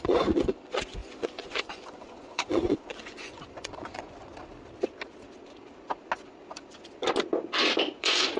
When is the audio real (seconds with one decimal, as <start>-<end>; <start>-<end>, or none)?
4.3-8.0